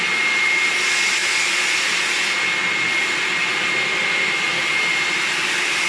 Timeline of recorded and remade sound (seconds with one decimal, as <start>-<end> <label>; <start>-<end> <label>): 0.0-5.9 recorded